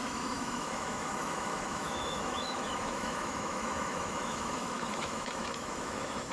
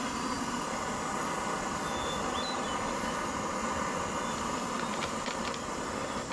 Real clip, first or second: second